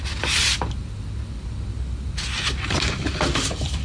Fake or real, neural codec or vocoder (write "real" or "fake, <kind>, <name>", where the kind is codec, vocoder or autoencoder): real